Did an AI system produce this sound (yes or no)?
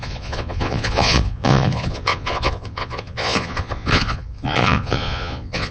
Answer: yes